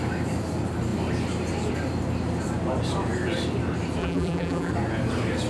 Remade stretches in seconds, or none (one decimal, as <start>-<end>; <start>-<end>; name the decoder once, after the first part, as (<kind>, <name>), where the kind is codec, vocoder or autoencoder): 4.0-4.7 (vocoder, BigVGAN v2)